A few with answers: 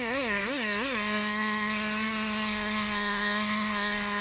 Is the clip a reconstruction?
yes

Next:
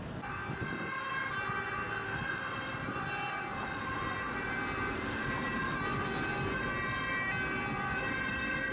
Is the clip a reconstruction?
no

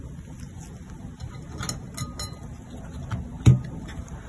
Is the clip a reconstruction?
no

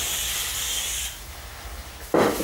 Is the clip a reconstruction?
no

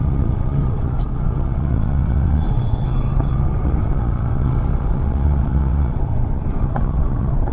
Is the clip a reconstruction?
yes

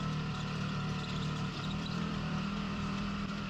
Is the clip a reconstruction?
yes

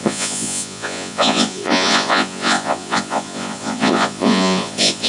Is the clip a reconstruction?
yes